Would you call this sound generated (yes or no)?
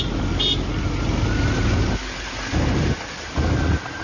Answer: no